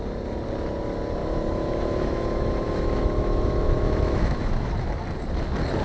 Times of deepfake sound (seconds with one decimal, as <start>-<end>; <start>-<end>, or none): 1.2-4.7